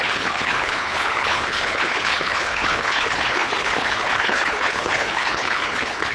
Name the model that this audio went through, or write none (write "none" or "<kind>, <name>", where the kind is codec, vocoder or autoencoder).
codec, HILCodec